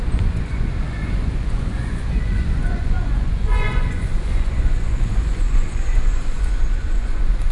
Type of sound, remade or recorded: remade